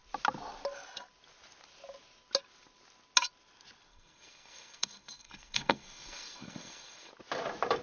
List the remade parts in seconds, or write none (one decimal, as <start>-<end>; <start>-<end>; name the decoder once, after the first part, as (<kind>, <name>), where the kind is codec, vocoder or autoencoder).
3.9-7.1 (codec, SNAC)